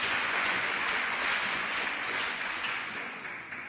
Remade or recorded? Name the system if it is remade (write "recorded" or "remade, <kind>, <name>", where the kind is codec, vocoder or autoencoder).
remade, vocoder, Vocos